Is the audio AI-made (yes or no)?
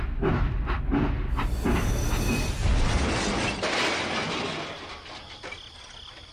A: no